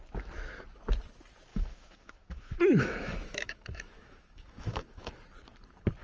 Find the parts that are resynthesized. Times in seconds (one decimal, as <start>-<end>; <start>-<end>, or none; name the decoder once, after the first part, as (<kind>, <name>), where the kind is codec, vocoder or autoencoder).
1.5-5.1 (autoencoder, DAC-VAE)